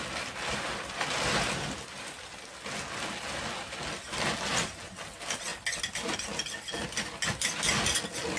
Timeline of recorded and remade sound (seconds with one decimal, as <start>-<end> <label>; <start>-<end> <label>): 0.0-8.4 recorded